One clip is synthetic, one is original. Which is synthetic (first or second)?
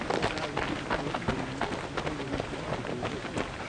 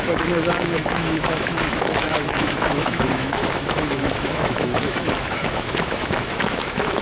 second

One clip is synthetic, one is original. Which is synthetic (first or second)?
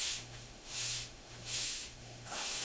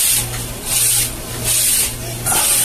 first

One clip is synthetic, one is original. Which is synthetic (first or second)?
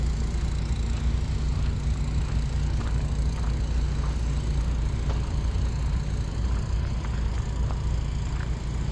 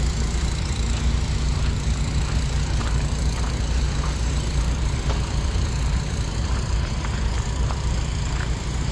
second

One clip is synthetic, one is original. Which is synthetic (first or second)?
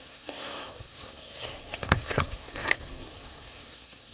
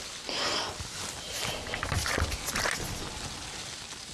first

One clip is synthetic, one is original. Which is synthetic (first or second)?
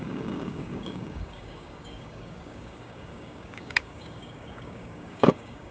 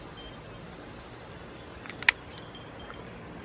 first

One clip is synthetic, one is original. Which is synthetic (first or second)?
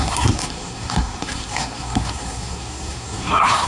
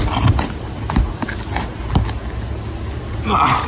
first